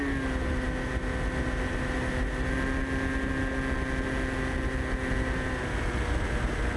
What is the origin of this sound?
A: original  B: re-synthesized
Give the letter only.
A